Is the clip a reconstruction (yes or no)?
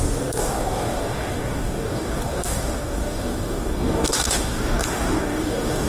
yes